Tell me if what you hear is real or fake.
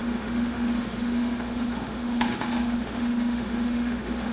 fake